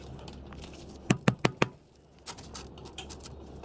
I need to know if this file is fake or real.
real